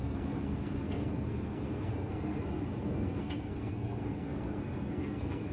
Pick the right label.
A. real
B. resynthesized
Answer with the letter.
B